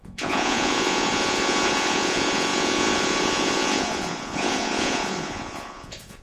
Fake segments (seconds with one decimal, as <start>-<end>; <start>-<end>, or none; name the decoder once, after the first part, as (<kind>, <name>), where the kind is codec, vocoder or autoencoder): 0.0-6.2 (vocoder, Vocos)